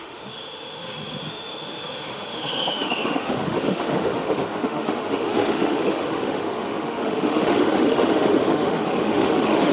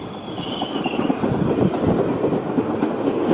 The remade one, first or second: first